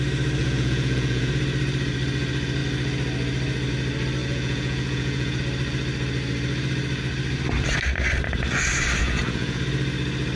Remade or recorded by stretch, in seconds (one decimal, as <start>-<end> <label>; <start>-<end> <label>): 0.0-0.4 recorded; 0.4-1.3 remade; 1.3-4.2 recorded; 4.2-5.4 remade; 5.4-9.0 recorded; 9.0-9.6 remade; 9.6-10.4 recorded